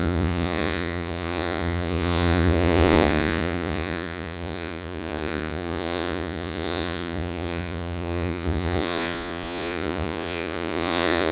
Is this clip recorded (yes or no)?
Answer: no